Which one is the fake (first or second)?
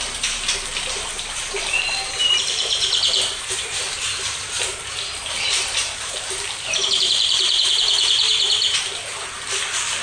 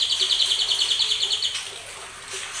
first